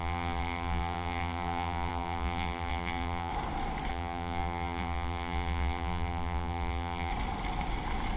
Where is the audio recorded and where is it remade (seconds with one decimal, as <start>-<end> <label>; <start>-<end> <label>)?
0.0-3.3 remade; 3.3-3.9 recorded; 3.9-7.1 remade; 7.1-8.2 recorded